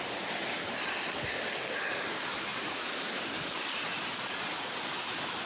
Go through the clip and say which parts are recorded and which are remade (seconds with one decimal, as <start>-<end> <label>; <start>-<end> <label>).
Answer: 0.0-5.5 recorded